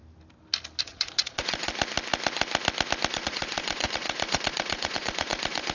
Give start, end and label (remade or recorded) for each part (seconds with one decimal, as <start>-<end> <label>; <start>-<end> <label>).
0.0-0.8 recorded; 0.8-1.7 remade; 1.7-3.1 recorded; 3.1-5.7 remade